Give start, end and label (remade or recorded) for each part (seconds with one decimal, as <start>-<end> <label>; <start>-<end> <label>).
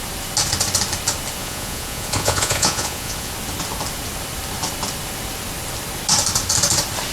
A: 0.0-1.4 recorded; 1.4-3.3 remade; 3.3-7.1 recorded